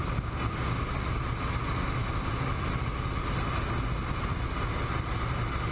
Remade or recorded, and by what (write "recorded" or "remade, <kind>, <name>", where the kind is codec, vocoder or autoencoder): recorded